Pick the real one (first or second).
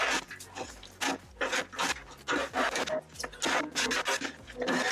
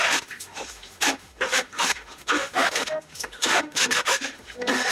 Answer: first